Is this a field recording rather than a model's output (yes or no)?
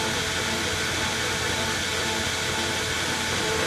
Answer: yes